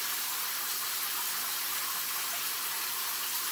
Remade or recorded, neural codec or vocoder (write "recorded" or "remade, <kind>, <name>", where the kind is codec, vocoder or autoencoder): recorded